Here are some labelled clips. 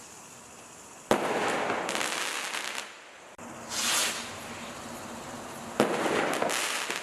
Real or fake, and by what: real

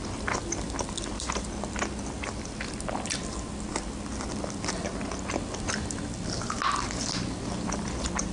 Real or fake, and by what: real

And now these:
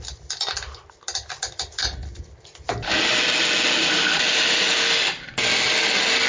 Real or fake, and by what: real